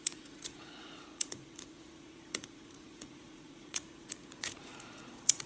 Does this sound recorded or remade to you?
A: remade